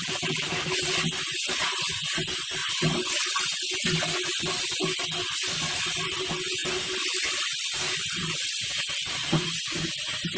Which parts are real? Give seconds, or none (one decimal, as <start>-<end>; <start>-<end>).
0.0-10.4